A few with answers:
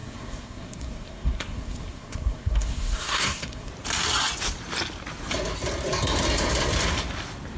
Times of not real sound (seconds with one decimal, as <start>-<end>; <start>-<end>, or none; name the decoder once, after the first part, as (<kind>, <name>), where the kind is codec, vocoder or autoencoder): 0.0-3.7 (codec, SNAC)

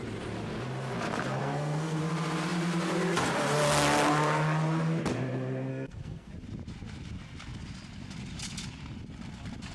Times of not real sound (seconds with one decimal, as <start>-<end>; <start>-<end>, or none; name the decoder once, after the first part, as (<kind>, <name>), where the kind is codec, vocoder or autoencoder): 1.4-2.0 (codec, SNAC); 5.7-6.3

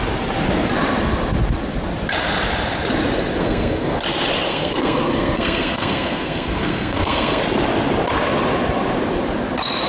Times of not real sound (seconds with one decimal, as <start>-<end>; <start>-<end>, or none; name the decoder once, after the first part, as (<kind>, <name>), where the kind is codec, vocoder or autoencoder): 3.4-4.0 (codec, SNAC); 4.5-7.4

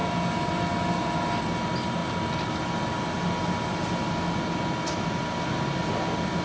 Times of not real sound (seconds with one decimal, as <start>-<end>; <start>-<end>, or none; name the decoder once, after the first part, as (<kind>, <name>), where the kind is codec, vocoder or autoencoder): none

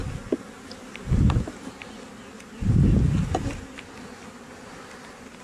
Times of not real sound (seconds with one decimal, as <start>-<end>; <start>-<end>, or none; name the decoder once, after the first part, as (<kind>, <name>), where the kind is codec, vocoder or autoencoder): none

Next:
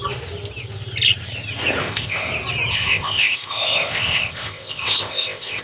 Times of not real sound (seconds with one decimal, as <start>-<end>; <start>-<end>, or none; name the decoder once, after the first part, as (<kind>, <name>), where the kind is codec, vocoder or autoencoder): 1.8-2.3 (codec, ZipCodec); 2.7-5.6